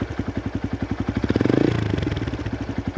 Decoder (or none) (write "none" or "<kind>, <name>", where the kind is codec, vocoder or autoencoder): none